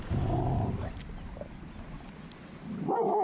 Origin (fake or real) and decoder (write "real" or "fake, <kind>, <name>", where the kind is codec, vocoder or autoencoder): real